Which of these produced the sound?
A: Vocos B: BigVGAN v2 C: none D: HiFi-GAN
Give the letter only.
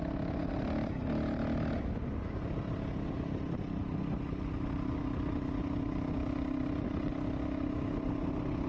C